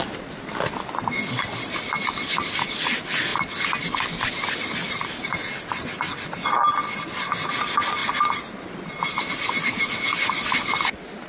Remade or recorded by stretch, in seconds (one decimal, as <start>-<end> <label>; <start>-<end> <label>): 0.0-11.3 recorded